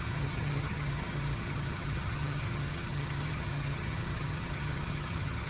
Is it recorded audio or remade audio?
remade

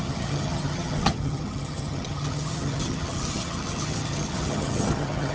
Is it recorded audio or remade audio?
remade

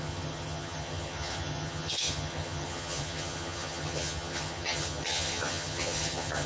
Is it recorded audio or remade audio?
remade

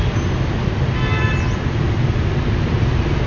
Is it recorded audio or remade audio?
recorded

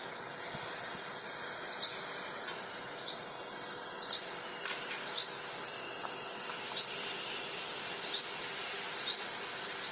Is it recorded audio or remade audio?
recorded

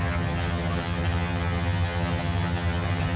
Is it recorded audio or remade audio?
remade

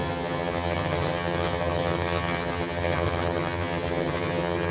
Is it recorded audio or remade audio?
remade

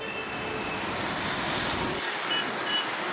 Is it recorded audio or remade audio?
recorded